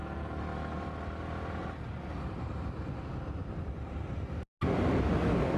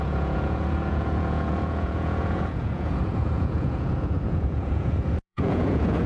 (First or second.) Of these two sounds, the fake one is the second